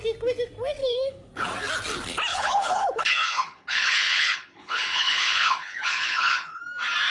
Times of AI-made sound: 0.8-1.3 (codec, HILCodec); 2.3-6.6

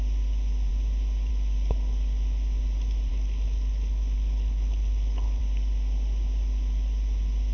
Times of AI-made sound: 3.1-5.4 (codec, HILCodec)

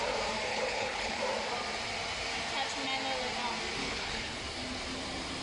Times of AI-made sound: 0.5-1.2 (codec, HILCodec); 3.8-4.4

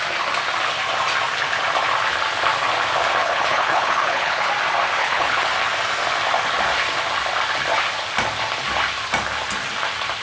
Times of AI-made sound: 3.2-4.5 (codec, HILCodec); 5.0-5.5

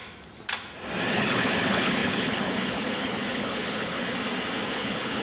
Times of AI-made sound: 1.1-4.1 (codec, HILCodec); 4.7-5.2

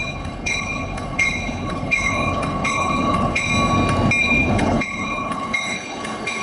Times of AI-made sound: 0.0-3.5 (codec, HILCodec); 4.2-6.4